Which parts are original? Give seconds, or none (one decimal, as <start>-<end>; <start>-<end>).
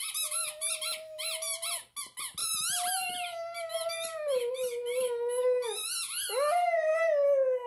0.0-7.7